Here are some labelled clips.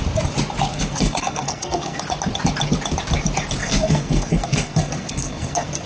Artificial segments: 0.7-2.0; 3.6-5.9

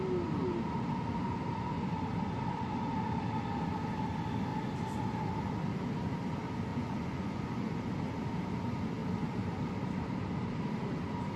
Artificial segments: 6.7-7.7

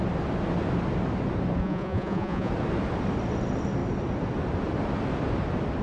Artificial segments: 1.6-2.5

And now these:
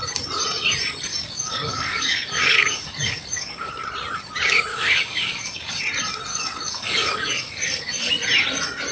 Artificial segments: 1.1-3.7; 4.7-5.8; 6.3-8.1